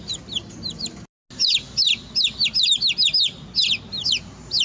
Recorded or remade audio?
recorded